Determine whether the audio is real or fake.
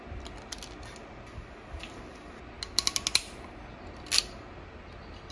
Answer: real